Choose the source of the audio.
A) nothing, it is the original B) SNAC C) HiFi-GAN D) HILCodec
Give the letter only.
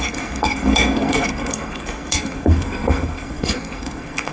B